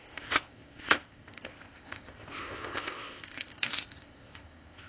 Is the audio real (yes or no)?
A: no